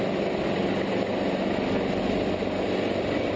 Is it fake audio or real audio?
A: real